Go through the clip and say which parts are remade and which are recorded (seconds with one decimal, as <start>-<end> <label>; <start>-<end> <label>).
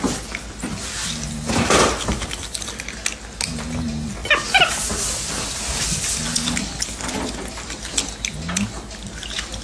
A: 0.0-9.6 recorded